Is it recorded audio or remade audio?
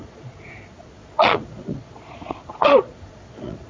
remade